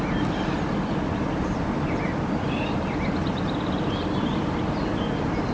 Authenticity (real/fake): real